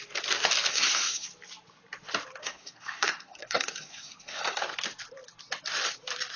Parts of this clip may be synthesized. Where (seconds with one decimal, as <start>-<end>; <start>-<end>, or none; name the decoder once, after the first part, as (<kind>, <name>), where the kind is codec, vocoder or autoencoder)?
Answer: 0.7-1.3 (codec, SNAC); 2.4-4.6